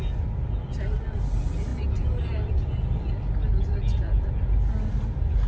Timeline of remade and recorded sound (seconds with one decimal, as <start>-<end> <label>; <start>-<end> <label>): 0.0-5.5 recorded